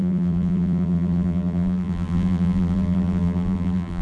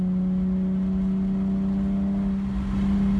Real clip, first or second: second